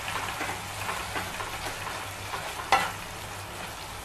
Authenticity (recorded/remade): recorded